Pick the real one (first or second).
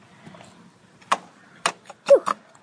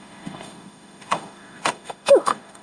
first